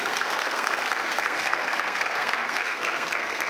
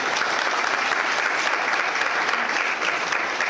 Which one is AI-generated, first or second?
first